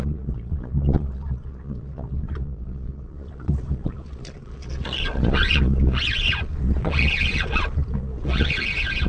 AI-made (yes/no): yes